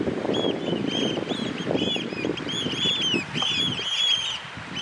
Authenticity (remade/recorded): recorded